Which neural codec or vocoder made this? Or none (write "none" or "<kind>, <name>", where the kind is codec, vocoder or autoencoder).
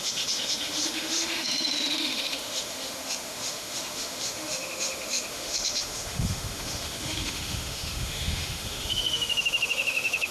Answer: autoencoder, DAC-VAE